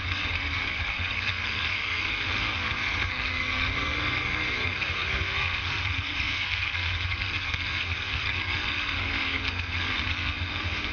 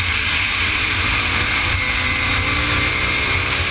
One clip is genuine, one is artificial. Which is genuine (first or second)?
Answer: second